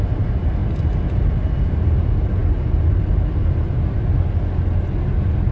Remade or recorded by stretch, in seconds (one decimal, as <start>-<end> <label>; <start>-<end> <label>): 0.0-5.5 recorded

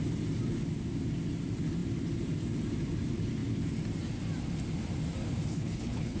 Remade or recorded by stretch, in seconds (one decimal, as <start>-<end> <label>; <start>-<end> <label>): 0.0-5.5 recorded; 5.5-6.2 remade

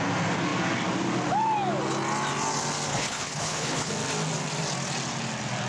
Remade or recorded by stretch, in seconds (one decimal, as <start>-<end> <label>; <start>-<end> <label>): 0.0-2.9 recorded; 2.9-3.9 remade; 3.9-5.7 recorded